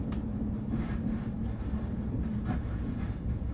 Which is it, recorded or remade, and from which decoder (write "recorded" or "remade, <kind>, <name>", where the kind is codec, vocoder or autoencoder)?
remade, vocoder, BigVGAN v2